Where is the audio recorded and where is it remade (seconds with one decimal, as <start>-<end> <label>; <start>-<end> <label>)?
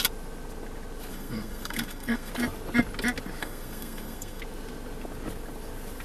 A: 0.0-1.1 recorded; 1.1-2.3 remade; 2.3-3.4 recorded; 3.4-4.4 remade; 4.4-6.0 recorded